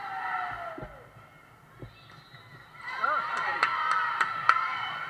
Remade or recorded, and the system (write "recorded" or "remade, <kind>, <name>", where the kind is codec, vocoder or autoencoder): recorded